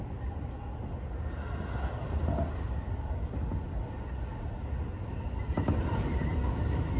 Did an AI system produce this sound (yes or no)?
no